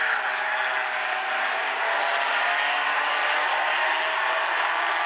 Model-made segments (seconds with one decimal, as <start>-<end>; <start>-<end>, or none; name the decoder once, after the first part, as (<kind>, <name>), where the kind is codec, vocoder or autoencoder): 0.8-3.9 (vocoder, BigVGAN v2)